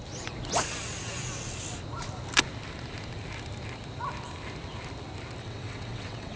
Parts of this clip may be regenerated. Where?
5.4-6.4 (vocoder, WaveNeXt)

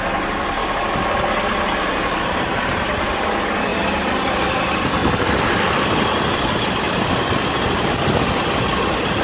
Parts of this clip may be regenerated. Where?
3.7-4.6 (vocoder, BigVGAN v2)

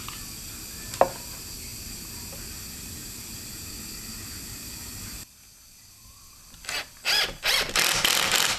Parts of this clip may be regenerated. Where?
none

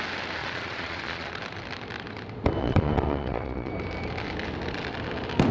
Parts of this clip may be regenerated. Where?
0.4-1.3 (vocoder, Vocos); 2.6-3.7

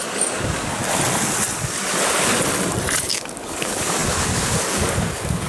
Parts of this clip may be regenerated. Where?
0.0-0.8 (codec, DAC); 3.0-5.5